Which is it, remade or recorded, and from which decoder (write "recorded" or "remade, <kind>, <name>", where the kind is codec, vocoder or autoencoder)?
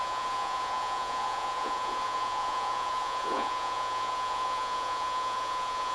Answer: remade, vocoder, Vocos